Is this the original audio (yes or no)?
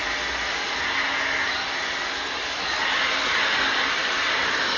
yes